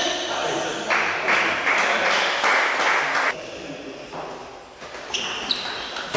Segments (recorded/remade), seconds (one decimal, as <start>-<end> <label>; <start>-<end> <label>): 0.0-6.2 recorded